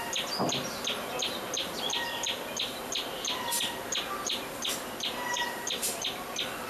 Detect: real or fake real